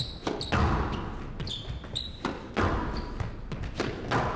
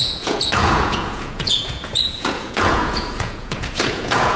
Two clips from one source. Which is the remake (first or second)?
second